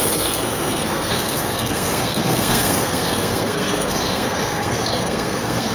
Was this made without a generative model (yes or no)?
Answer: no